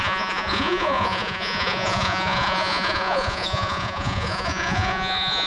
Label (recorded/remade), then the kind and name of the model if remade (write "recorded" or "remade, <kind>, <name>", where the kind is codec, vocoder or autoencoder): remade, vocoder, Vocos